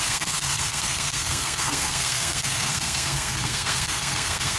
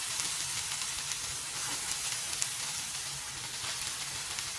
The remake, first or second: first